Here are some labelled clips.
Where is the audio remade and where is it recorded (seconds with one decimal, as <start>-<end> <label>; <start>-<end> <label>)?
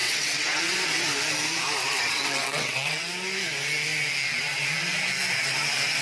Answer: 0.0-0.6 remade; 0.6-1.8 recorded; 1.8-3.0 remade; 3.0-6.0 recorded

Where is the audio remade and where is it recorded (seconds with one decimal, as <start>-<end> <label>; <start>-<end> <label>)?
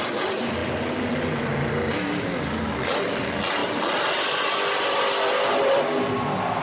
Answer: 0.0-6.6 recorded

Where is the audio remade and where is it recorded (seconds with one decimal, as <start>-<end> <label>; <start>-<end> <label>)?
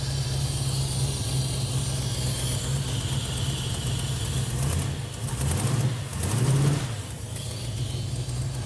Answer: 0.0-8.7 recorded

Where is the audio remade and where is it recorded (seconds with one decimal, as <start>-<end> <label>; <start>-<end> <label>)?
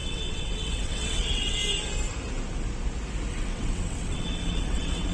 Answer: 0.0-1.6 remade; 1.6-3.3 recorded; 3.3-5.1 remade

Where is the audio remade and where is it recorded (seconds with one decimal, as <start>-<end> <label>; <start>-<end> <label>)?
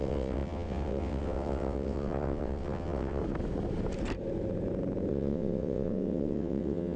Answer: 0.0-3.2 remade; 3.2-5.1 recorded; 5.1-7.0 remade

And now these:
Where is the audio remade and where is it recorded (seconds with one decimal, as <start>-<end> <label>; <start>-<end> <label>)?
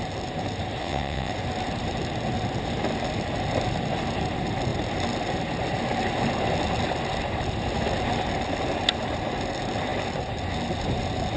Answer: 0.0-0.8 recorded; 0.8-1.3 remade; 1.3-11.4 recorded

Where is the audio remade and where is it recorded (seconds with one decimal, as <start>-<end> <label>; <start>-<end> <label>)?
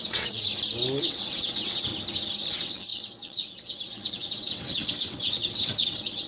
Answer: 0.0-0.5 remade; 0.5-1.0 recorded; 1.0-1.9 remade; 1.9-2.5 recorded; 2.5-6.3 remade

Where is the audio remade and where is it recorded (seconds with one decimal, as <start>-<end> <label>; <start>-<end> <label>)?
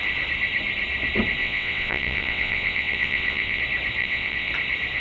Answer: 0.0-1.4 recorded; 1.4-3.6 remade; 3.6-4.0 recorded; 4.0-4.5 remade; 4.5-5.0 recorded